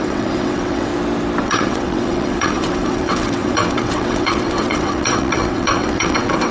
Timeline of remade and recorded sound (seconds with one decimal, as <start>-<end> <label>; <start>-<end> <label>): 0.0-0.9 remade; 0.9-1.4 recorded; 1.4-6.5 remade

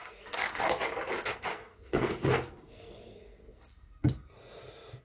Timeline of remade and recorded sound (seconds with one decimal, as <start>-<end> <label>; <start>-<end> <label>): 0.0-0.8 remade; 0.8-1.3 recorded; 1.3-4.3 remade; 4.3-5.0 recorded

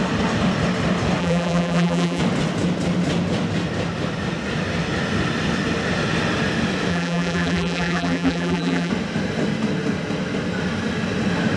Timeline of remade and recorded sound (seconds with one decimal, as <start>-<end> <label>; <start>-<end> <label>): 0.0-1.2 recorded; 1.2-2.2 remade; 2.2-6.9 recorded; 6.9-8.9 remade; 8.9-11.6 recorded

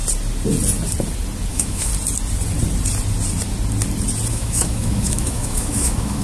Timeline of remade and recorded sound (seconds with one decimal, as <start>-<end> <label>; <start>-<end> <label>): 0.0-1.5 recorded; 1.5-1.9 remade; 1.9-4.3 recorded; 4.3-6.2 remade

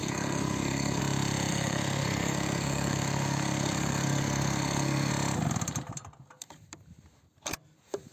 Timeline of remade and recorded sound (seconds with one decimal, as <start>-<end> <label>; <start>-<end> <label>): 0.0-1.0 remade; 1.0-1.5 recorded; 1.5-5.1 remade; 5.1-8.1 recorded

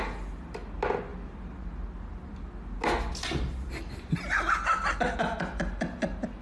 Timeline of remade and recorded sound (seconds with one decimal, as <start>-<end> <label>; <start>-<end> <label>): 0.0-6.4 recorded

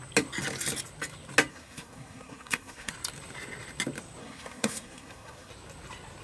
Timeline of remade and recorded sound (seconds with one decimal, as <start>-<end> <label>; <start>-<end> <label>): 0.0-1.5 recorded; 1.5-2.9 remade; 2.9-4.2 recorded; 4.2-5.5 remade; 5.5-6.2 recorded